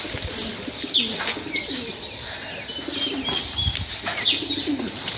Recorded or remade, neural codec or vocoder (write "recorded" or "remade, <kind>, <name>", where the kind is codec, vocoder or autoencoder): recorded